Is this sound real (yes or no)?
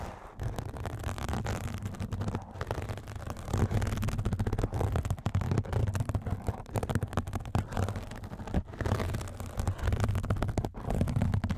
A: yes